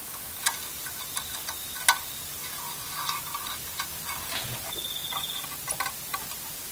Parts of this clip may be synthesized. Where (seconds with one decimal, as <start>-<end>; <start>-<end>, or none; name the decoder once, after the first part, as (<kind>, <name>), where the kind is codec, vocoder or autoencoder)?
2.4-3.9 (vocoder, BigVGAN v2)